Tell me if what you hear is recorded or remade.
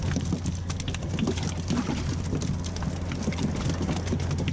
recorded